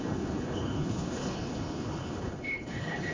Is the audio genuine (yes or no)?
no